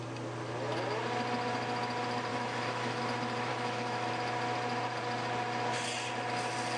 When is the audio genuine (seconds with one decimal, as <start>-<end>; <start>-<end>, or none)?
0.0-2.3; 3.0-3.5; 4.1-6.8